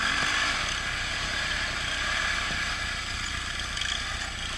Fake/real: real